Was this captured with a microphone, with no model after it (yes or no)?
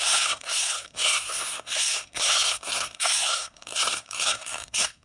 no